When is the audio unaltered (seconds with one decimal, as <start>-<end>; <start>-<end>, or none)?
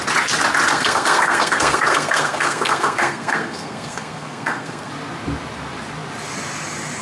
0.0-0.7; 4.9-7.0